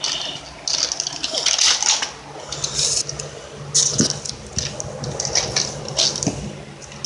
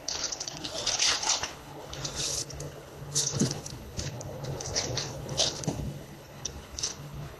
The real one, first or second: first